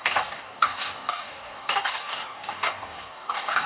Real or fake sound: fake